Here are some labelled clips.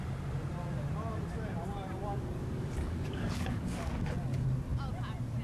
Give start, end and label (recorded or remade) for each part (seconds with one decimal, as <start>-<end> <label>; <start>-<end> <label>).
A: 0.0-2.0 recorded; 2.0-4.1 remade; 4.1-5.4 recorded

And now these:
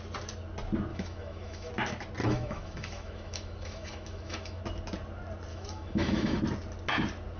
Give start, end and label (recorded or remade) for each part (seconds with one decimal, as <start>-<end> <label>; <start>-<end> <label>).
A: 0.0-0.9 recorded; 0.9-1.7 remade; 1.7-2.2 recorded; 2.2-4.6 remade; 4.6-5.5 recorded; 5.5-6.4 remade; 6.4-7.4 recorded

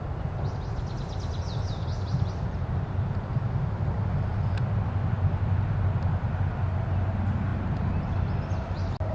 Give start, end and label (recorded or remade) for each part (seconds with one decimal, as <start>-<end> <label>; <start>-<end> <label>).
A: 0.0-9.1 recorded

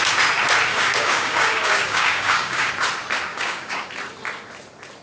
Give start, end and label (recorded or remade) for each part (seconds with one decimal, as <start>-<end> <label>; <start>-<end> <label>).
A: 0.0-0.7 recorded; 0.7-2.7 remade; 2.7-3.3 recorded; 3.3-3.9 remade; 3.9-5.0 recorded